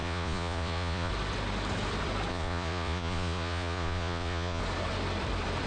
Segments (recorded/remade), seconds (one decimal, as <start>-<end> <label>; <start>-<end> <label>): 0.0-1.1 remade; 1.1-2.3 recorded; 2.3-4.6 remade; 4.6-5.7 recorded